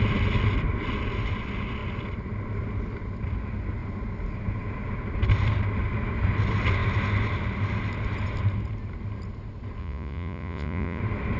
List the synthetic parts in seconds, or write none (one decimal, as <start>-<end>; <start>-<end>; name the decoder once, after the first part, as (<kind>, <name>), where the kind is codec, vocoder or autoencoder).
9.8-11.0 (vocoder, Vocos)